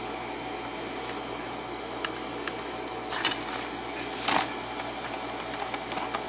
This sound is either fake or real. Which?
real